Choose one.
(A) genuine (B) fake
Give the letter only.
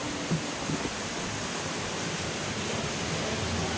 A